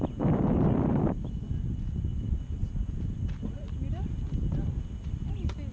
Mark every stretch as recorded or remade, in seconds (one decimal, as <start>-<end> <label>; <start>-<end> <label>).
0.0-5.7 recorded